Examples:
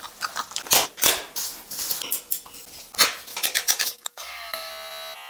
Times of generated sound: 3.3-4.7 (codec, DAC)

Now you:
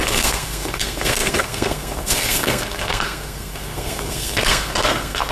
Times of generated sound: 0.0-5.3 (codec, SNAC)

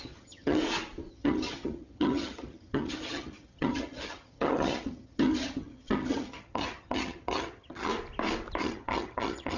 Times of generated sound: 0.0-0.6 (vocoder, HiFi-GAN); 1.1-7.9; 8.6-9.6

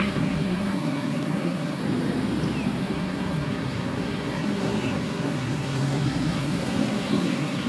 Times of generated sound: 0.0-1.8 (codec, SNAC); 2.8-7.7